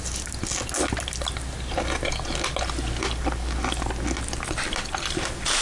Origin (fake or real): real